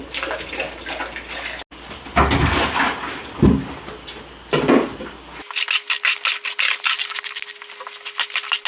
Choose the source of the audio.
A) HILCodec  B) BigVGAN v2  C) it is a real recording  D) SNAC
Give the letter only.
C